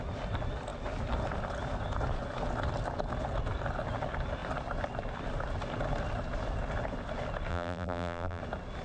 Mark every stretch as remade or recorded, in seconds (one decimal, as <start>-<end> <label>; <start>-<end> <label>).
0.0-7.5 recorded; 7.5-8.4 remade; 8.4-8.8 recorded